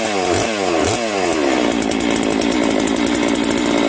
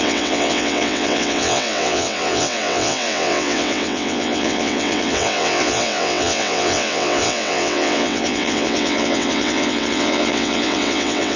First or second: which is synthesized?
second